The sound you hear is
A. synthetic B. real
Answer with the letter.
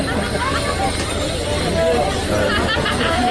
B